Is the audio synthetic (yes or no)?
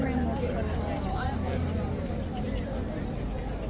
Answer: no